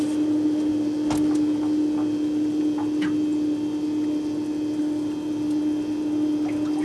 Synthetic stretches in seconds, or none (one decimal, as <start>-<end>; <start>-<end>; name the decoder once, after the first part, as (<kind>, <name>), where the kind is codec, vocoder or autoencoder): none